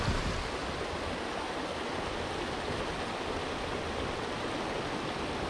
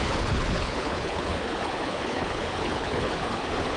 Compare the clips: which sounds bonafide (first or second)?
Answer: first